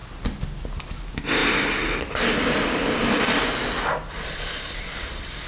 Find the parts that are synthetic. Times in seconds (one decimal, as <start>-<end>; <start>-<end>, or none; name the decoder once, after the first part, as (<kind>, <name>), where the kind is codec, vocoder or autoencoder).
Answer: none